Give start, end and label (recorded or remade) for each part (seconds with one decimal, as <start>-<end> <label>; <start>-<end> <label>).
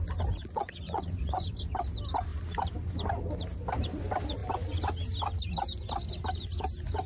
0.0-0.4 recorded; 0.4-1.5 remade; 1.5-7.1 recorded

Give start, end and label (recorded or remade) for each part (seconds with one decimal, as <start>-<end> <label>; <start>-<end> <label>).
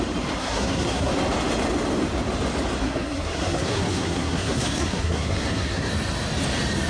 0.0-0.4 recorded; 0.4-1.1 remade; 1.1-2.8 recorded; 2.8-5.9 remade; 5.9-6.9 recorded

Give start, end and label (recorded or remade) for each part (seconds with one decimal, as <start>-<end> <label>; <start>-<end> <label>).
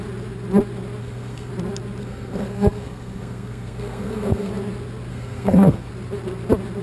0.0-1.0 recorded; 1.0-1.5 remade; 1.5-2.0 recorded; 2.0-4.5 remade; 4.5-5.1 recorded; 5.1-5.9 remade; 5.9-6.8 recorded